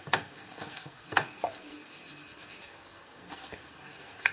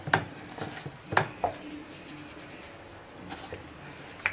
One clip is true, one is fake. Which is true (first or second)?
second